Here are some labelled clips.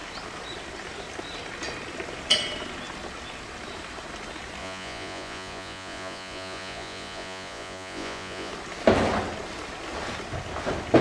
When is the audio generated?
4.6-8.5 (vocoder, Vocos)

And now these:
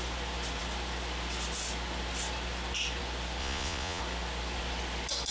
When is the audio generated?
3.4-4.0 (vocoder, Vocos)

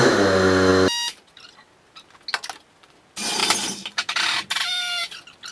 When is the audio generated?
3.4-5.0 (vocoder, BigVGAN v2)

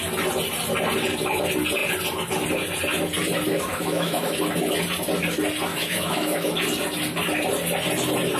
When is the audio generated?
3.5-4.4 (autoencoder, DAC-VAE); 5.7-6.5